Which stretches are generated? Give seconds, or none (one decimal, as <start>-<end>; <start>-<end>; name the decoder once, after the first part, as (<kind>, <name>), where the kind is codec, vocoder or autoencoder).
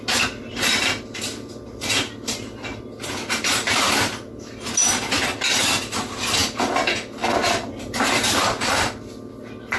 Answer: none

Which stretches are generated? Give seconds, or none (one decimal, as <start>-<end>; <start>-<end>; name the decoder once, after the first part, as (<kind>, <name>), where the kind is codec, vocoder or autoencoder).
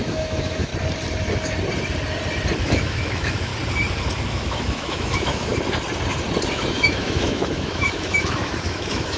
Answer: 0.0-0.7 (autoencoder, DAC-VAE); 2.6-3.5; 4.3-5.5; 6.5-9.2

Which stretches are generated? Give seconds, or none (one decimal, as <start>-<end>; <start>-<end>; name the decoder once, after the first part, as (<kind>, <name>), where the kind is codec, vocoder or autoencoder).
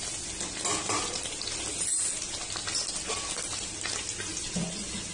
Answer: none